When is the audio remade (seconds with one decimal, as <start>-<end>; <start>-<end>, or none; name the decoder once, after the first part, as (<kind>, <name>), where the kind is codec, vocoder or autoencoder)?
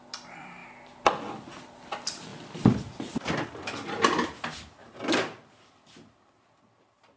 none